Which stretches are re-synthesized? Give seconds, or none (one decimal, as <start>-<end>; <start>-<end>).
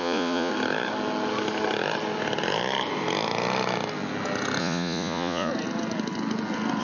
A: 0.0-0.5; 4.6-5.5